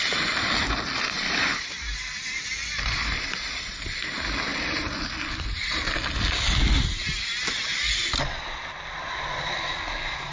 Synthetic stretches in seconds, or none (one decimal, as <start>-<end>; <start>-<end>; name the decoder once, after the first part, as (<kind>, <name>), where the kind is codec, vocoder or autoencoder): none